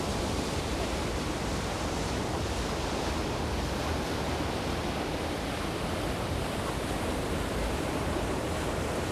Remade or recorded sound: remade